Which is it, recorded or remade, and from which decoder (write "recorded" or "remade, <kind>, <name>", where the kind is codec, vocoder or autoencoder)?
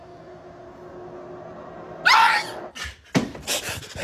recorded